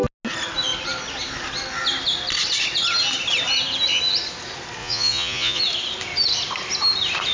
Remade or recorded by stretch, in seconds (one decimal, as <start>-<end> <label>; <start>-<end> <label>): 0.0-4.8 recorded; 4.8-5.6 remade; 5.6-7.3 recorded

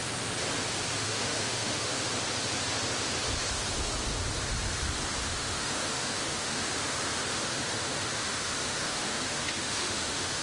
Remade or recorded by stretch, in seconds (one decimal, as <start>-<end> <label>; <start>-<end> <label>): 0.0-0.9 recorded; 0.9-2.1 remade; 2.1-5.3 recorded; 5.3-6.7 remade; 6.7-7.3 recorded; 7.3-10.4 remade